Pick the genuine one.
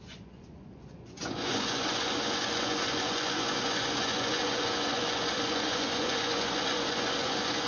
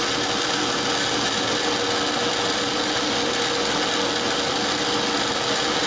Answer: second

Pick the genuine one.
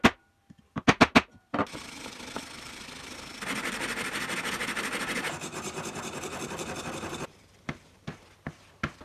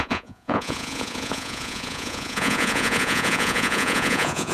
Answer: first